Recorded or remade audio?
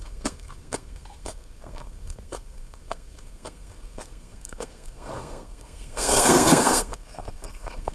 remade